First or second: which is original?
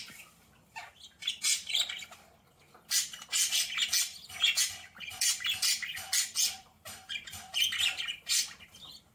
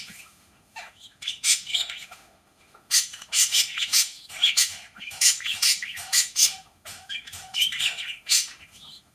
first